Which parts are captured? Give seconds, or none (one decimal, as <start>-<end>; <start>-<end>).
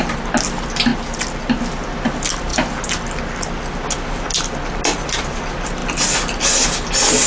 0.0-7.3